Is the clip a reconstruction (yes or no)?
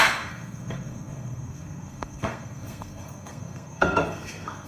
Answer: yes